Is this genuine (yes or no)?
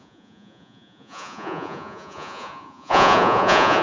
no